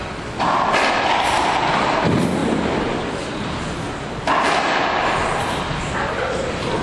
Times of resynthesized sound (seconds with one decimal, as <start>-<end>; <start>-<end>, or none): none

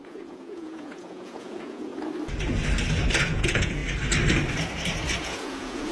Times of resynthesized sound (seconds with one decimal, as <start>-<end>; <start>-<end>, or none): 0.0-1.9; 3.2-3.8; 5.2-5.9

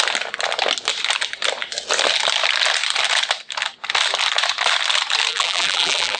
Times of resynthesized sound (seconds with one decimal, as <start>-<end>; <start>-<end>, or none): 5.3-6.2

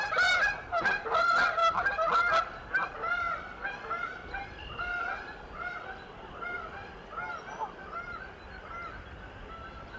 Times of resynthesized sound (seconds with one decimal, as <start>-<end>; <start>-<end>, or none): none

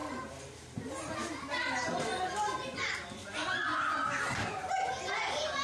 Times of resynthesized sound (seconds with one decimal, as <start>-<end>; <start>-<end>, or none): 3.2-4.0